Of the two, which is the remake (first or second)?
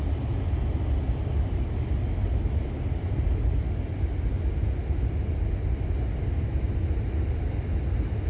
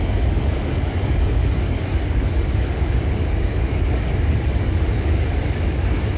second